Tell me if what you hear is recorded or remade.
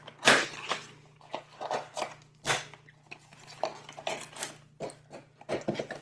recorded